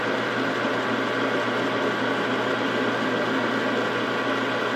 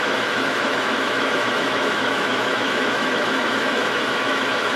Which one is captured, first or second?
first